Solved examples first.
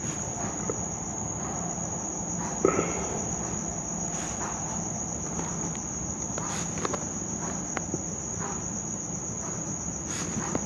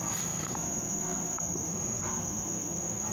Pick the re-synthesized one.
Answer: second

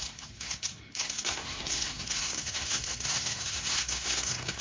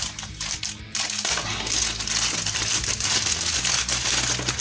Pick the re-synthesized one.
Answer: first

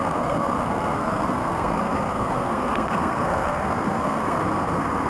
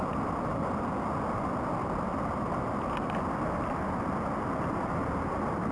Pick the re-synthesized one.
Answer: first